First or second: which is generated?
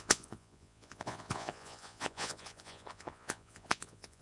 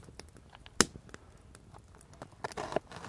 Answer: first